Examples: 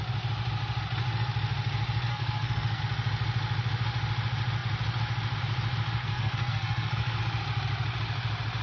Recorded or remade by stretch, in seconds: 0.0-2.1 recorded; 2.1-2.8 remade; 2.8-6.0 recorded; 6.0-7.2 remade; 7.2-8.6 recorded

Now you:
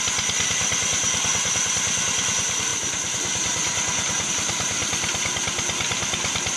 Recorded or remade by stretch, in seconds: 0.0-6.6 recorded

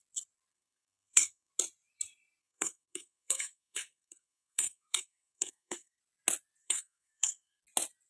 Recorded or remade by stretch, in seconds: 0.0-0.5 recorded; 0.5-1.5 remade; 1.5-2.4 recorded; 2.4-6.0 remade; 6.0-6.6 recorded; 6.6-7.6 remade; 7.6-8.1 recorded

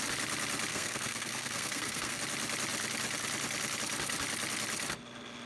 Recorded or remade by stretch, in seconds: 0.0-0.7 recorded; 0.7-2.2 remade; 2.2-5.5 recorded